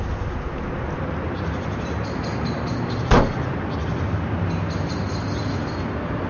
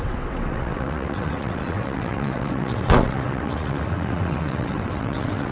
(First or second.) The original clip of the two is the first